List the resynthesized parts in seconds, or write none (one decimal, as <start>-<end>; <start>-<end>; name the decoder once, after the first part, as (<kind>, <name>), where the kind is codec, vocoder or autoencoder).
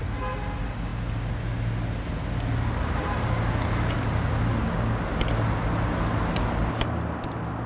none